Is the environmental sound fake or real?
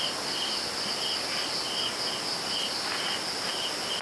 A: real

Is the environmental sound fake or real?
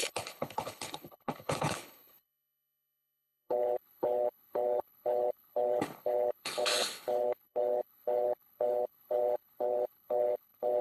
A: fake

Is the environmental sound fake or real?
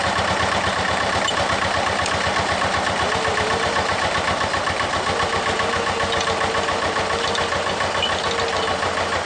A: real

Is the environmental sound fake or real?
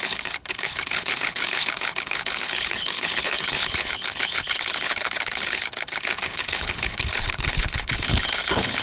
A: fake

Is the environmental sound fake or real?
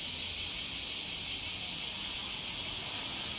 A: real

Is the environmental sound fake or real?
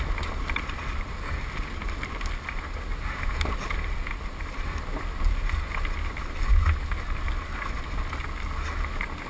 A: real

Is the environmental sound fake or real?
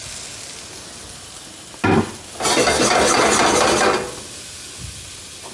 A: real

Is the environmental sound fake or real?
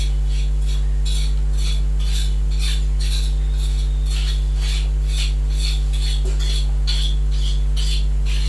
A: real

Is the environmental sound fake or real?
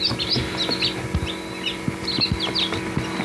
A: real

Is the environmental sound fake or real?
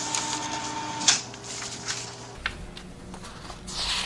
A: real